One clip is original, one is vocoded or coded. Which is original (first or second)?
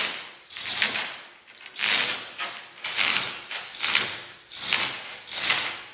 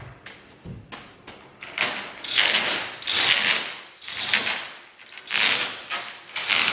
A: second